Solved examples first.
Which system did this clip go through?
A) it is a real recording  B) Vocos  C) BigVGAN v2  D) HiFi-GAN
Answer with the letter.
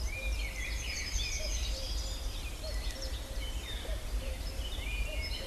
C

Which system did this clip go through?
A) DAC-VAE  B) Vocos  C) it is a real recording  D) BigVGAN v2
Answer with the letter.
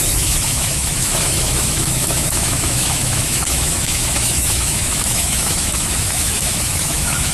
A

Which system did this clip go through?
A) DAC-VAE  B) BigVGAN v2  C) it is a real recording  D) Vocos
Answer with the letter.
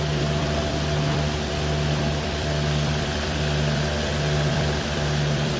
B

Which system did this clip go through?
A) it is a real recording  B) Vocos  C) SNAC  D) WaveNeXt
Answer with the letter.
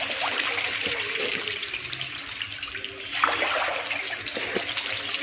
A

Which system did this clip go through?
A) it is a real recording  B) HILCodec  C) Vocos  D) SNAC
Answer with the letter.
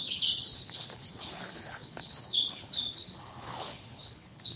B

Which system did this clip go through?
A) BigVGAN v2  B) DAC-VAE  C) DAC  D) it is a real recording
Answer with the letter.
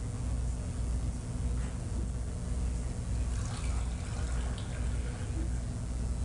D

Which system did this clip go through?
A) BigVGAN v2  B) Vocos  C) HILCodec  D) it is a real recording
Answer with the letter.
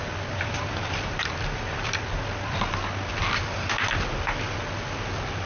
D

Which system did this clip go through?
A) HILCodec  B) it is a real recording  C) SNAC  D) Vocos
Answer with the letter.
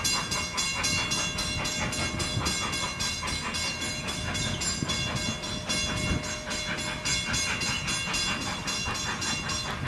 B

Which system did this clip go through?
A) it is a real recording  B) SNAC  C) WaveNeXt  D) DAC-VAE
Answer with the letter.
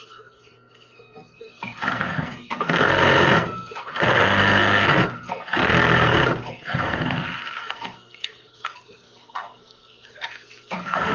B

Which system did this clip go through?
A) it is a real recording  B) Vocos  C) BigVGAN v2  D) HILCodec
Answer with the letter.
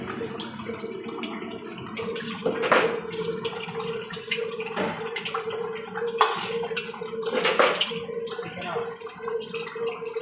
A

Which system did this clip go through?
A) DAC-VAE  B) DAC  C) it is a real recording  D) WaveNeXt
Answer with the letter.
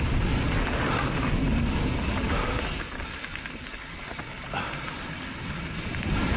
C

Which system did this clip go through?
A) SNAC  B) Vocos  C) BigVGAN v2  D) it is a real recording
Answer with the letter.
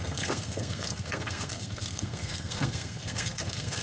A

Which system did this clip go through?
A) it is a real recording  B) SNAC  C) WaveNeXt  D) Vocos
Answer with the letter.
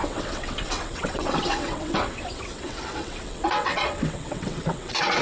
C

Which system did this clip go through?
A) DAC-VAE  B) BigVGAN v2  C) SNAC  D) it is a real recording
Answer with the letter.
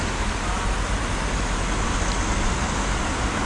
D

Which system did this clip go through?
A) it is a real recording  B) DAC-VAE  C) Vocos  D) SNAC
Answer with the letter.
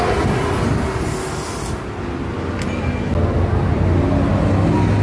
A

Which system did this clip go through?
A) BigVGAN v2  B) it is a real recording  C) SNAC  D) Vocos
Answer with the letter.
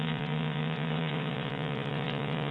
D